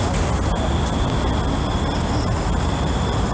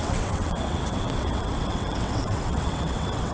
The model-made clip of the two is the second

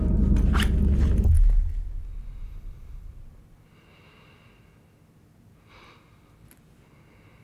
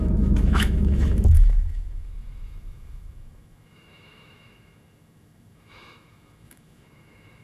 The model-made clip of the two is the second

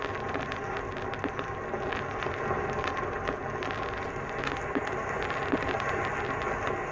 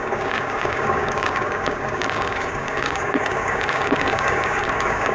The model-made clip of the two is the second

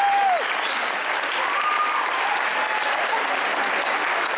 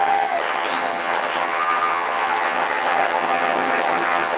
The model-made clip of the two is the second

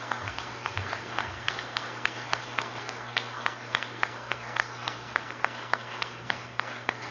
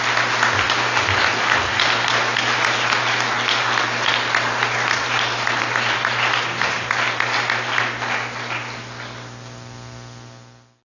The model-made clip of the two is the first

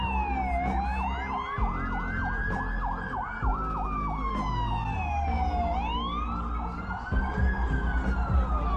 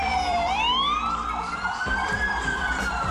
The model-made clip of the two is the second